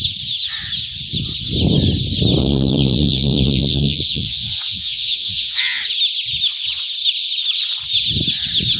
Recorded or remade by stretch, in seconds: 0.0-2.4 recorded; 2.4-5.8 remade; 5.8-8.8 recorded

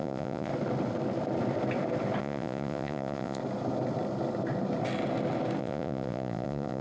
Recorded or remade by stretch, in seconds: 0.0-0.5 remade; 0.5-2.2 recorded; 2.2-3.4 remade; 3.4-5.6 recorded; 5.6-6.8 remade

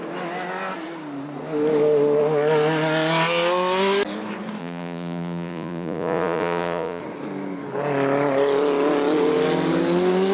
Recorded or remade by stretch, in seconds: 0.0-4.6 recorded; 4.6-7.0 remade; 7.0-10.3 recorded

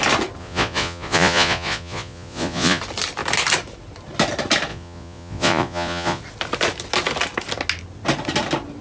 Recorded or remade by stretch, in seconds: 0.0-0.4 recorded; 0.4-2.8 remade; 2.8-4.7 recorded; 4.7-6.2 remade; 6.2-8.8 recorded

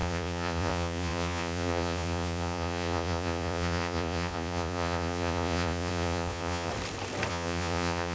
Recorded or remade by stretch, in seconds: 0.0-6.7 remade; 6.7-7.3 recorded; 7.3-8.1 remade